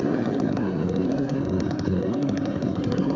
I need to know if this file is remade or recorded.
remade